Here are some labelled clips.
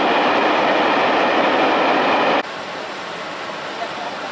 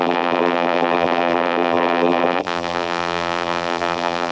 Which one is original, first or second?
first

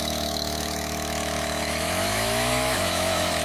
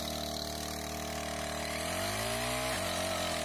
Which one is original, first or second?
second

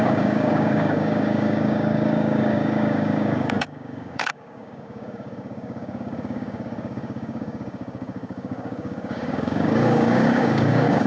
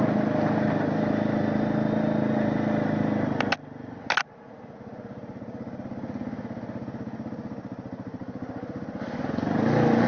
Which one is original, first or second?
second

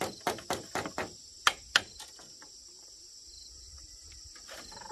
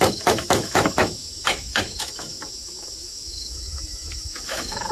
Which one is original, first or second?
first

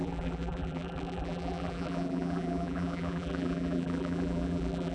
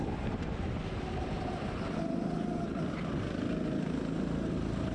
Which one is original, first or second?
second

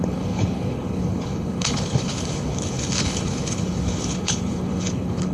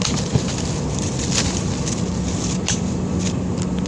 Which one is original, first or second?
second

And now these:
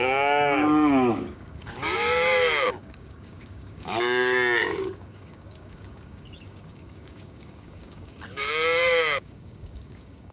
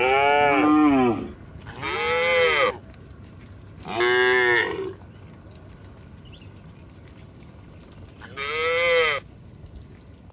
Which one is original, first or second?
second